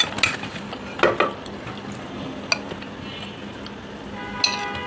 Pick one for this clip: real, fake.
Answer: real